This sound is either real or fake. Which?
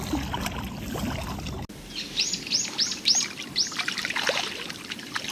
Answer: real